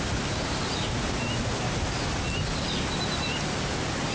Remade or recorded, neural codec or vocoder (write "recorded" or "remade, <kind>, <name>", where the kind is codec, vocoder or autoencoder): recorded